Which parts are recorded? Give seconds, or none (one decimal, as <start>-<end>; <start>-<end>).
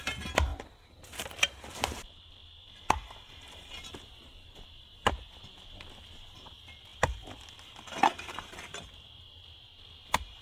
0.0-10.4